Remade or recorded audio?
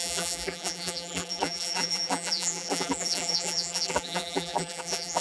remade